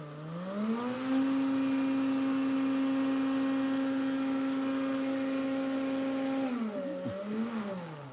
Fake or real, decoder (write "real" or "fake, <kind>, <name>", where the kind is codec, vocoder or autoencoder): real